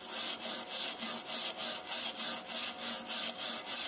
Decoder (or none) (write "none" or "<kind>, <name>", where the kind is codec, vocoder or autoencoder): none